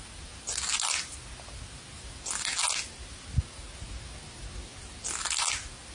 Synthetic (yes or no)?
no